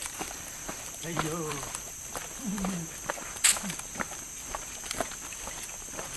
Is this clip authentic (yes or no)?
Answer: no